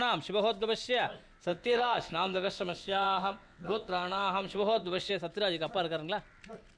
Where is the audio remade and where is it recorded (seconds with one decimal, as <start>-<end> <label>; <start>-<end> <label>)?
0.0-1.5 recorded; 1.5-5.1 remade; 5.1-6.8 recorded